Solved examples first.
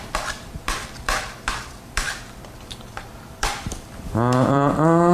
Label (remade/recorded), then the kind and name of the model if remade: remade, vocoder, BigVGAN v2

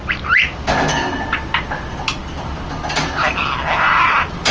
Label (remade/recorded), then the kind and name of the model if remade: recorded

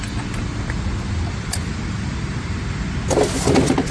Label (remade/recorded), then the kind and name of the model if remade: recorded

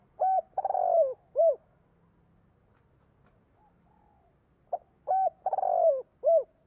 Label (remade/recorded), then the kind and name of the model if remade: recorded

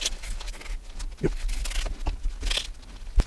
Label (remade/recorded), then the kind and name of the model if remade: recorded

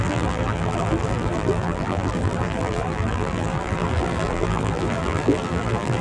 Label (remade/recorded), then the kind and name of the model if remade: remade, vocoder, BigVGAN v2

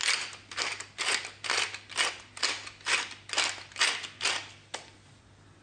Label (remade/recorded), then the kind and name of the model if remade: recorded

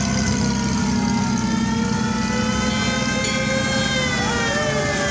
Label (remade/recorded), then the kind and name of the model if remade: recorded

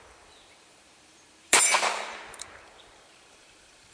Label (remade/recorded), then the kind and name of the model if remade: remade, vocoder, BigVGAN v2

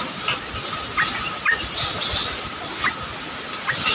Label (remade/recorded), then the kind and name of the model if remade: recorded